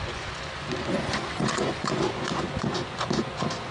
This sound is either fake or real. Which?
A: fake